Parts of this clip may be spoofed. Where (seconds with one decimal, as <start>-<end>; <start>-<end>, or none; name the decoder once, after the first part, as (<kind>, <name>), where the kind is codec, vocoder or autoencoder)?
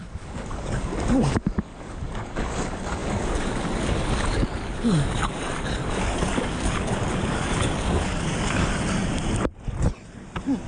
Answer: 0.0-8.7 (codec, DAC)